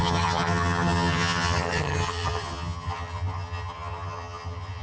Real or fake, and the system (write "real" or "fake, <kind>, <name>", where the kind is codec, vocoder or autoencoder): fake, vocoder, HiFi-GAN